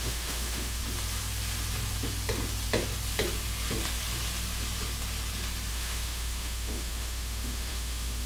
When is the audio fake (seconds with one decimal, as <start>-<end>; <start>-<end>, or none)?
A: 0.0-0.8; 5.7-8.3